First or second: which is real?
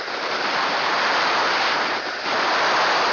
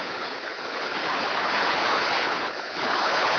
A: first